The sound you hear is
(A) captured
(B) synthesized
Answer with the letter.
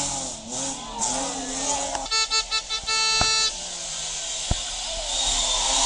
A